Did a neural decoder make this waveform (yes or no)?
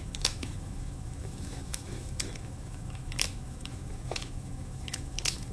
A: yes